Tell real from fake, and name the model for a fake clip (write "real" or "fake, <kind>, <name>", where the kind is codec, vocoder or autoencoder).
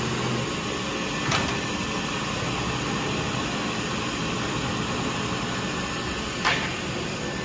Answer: real